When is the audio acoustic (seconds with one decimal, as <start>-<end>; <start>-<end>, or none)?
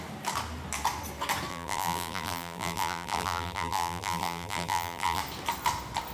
0.0-1.5; 5.2-6.1